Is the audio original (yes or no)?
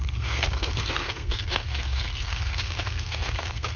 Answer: no